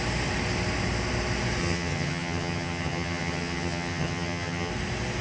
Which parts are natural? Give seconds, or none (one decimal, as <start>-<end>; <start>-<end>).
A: 0.0-1.6; 4.7-5.2